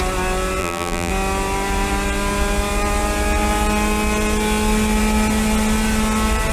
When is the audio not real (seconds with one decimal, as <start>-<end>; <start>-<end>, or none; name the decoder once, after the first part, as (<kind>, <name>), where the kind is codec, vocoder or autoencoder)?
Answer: 0.6-1.1 (vocoder, BigVGAN v2)